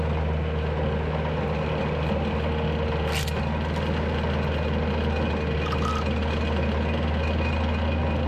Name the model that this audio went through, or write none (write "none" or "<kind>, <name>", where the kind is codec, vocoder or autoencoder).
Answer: none